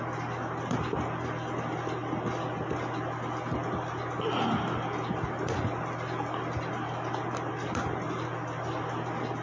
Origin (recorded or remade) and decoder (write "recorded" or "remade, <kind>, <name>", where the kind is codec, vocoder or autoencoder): recorded